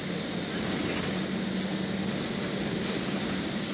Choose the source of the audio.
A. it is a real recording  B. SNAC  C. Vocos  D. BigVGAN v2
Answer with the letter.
A